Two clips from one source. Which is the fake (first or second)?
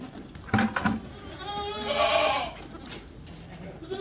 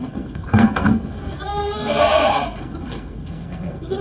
second